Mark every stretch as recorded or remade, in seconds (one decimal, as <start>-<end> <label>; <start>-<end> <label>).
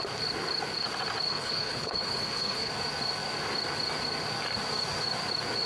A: 0.0-1.3 recorded; 1.3-2.7 remade; 2.7-5.7 recorded